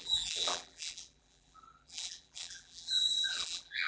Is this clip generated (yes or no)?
yes